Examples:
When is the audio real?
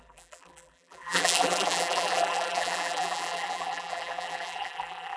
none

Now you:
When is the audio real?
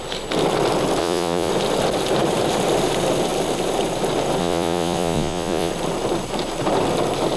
0.0-1.0; 1.5-4.4; 5.7-7.4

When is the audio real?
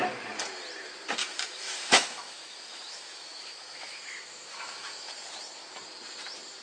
0.0-1.2; 5.1-6.6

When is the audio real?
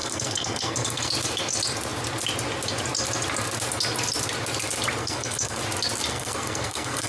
1.1-5.0; 5.6-6.1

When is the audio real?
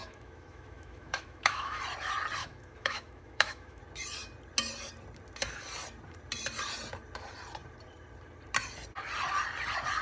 1.8-2.4; 3.8-10.0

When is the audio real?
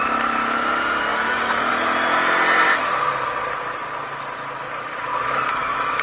0.0-1.1; 1.7-5.1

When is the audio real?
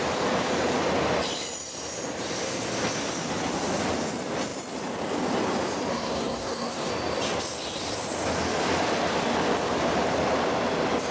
0.0-5.9; 6.9-11.1